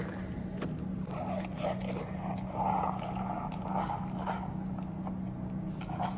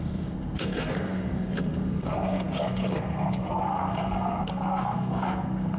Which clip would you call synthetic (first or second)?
second